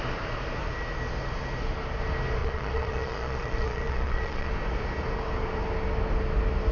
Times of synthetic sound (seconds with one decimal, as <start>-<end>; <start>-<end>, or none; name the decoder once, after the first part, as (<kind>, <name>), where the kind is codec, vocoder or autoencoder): 2.4-4.5 (vocoder, Vocos)